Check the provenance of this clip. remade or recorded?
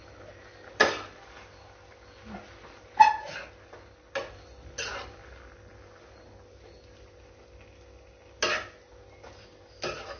recorded